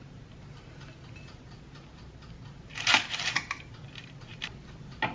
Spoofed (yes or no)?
no